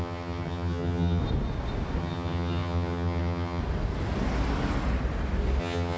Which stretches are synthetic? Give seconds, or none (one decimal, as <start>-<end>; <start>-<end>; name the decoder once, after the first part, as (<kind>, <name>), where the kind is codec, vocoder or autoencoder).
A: 0.0-1.2 (vocoder, HiFi-GAN); 2.0-3.6; 5.6-6.0